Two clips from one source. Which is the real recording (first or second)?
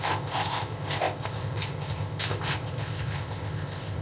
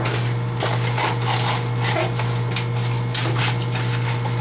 second